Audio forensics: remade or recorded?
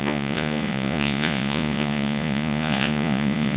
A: remade